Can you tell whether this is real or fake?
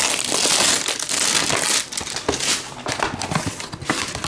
real